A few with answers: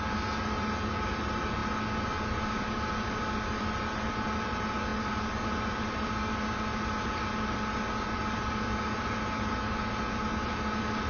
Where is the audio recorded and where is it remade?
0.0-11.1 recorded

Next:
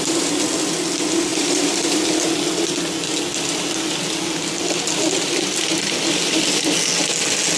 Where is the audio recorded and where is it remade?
0.0-1.3 recorded; 1.3-2.0 remade; 2.0-7.6 recorded

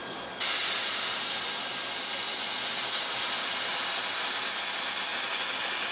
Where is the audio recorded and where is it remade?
0.0-5.9 recorded

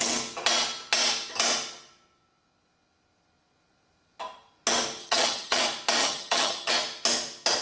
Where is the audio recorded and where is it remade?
0.0-5.0 recorded; 5.0-5.6 remade; 5.6-6.0 recorded; 6.0-6.7 remade; 6.7-7.6 recorded

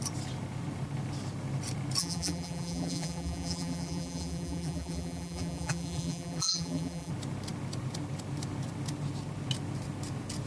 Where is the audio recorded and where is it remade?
0.0-2.0 recorded; 2.0-7.1 remade; 7.1-10.5 recorded

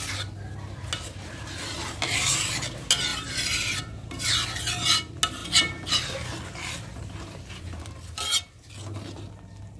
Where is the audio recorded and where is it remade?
0.0-3.1 recorded; 3.1-4.3 remade; 4.3-9.8 recorded